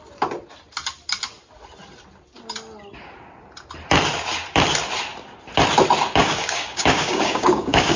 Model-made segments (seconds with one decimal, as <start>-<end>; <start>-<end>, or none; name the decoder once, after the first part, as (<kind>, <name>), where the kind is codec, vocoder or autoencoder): 6.2-8.0 (codec, DAC)